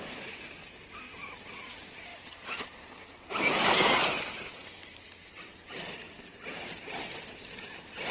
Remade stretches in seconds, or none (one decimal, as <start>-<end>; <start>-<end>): none